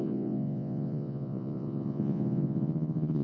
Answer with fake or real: fake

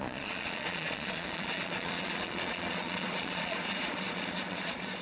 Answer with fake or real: fake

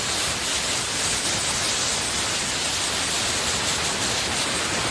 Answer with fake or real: real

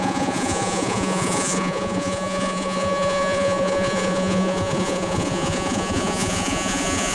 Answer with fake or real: fake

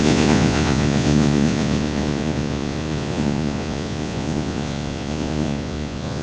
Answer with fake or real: fake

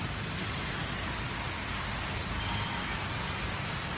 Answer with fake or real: real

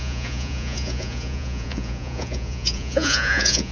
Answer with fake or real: fake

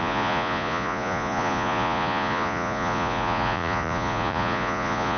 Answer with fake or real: fake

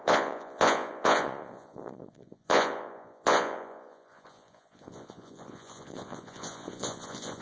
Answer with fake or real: fake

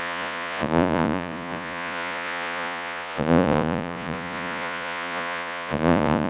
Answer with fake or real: fake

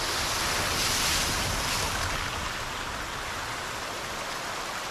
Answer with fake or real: real